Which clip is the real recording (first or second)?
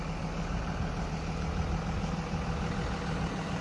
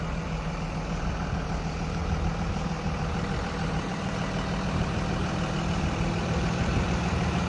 first